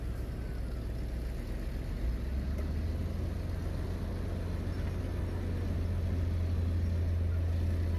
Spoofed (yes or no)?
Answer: no